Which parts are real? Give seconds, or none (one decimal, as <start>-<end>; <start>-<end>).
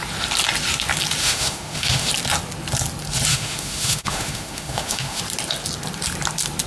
0.0-1.2; 2.1-3.3; 5.2-6.7